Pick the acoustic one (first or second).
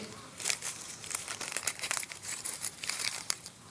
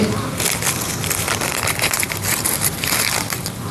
second